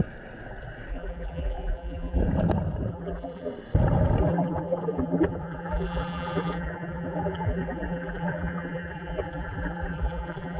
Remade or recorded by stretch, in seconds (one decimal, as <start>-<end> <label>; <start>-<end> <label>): 0.0-0.9 recorded; 0.9-2.2 remade; 2.2-2.9 recorded; 2.9-3.5 remade; 3.5-4.2 recorded; 4.2-10.6 remade